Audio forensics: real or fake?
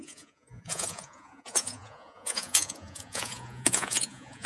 fake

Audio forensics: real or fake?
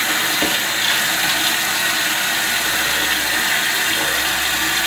real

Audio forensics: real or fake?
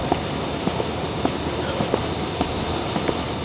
real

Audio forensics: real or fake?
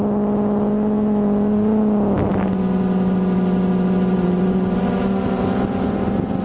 real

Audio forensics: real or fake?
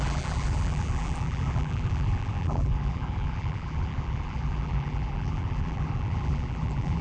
fake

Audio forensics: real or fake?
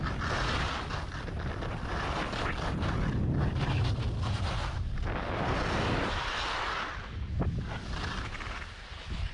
real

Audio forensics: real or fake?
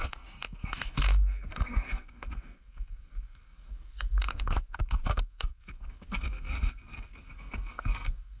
fake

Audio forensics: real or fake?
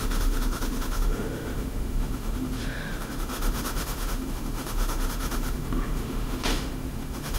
fake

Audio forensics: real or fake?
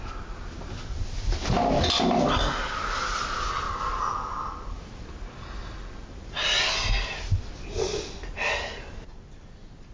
real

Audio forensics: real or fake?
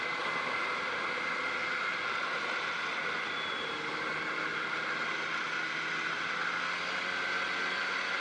real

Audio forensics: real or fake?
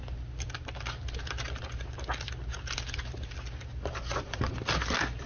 real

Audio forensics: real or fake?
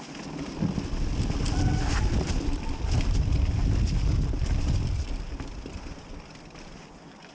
real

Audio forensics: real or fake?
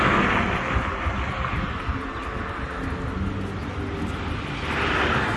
real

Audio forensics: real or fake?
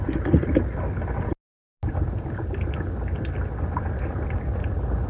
real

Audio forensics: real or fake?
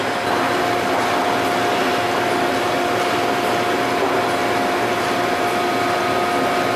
real